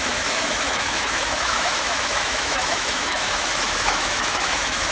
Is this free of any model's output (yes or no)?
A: no